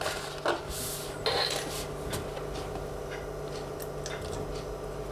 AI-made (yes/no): no